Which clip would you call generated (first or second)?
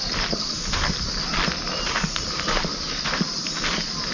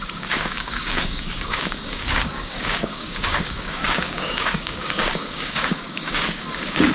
second